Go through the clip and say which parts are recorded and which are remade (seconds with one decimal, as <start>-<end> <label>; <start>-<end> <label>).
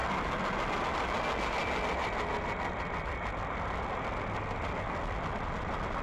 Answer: 0.0-6.0 recorded